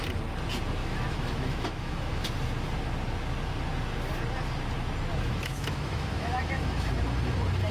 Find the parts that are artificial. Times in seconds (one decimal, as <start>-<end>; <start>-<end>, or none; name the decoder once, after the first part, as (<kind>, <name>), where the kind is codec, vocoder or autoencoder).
0.8-2.3 (autoencoder, DAC-VAE); 5.1-6.9